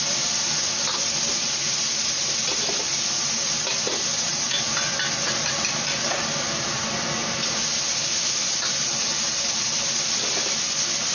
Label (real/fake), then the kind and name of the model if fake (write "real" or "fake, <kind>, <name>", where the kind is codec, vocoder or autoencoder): real